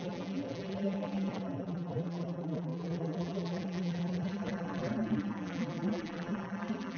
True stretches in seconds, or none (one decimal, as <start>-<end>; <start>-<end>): none